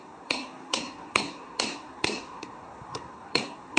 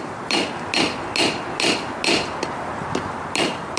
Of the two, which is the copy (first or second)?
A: first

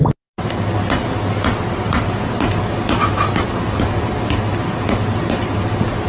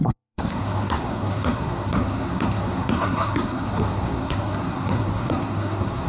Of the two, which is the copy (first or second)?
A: second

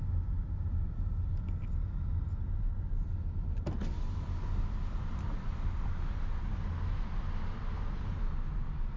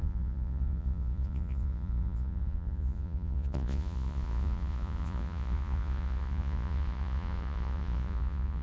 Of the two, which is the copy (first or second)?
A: second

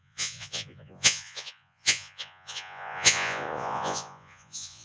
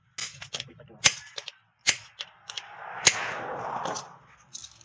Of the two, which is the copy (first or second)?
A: first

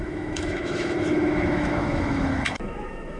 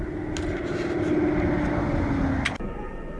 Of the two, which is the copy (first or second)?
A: first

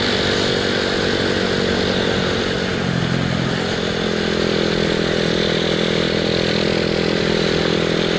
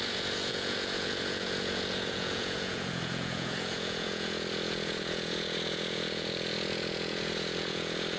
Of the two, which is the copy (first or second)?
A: second